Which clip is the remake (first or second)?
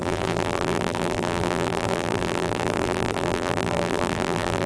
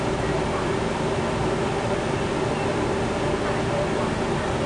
first